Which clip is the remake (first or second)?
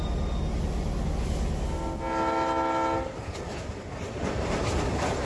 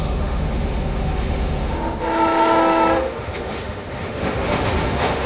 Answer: second